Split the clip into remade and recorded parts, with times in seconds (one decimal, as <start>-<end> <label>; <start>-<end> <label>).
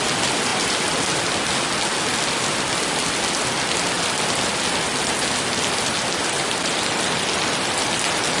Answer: 0.0-8.4 recorded